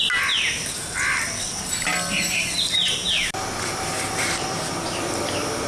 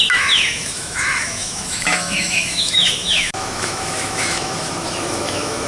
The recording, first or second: first